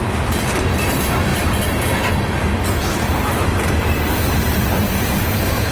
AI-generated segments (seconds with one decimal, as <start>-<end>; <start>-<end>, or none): 3.1-5.7

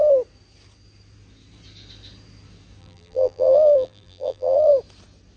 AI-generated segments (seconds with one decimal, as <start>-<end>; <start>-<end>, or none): 2.8-4.7